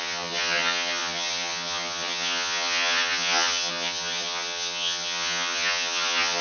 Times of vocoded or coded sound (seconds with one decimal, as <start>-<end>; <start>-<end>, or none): 0.0-6.4